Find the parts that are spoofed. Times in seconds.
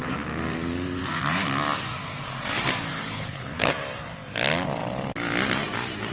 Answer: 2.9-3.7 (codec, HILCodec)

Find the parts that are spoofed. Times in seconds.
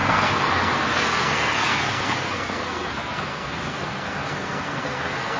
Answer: 0.0-5.4 (codec, SNAC)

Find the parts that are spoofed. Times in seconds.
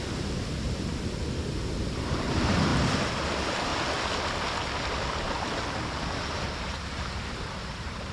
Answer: 0.0-2.7 (vocoder, BigVGAN v2); 3.3-3.7; 6.1-8.1